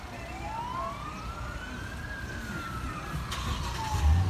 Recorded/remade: recorded